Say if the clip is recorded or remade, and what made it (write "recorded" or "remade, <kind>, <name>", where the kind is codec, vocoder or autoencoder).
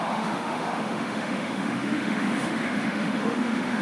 remade, autoencoder, DAC-VAE